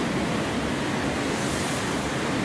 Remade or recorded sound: recorded